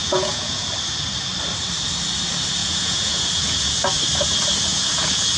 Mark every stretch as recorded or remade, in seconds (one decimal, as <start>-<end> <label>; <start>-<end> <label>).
0.0-0.7 remade; 0.7-2.6 recorded; 2.6-3.7 remade; 3.7-4.7 recorded; 4.7-5.4 remade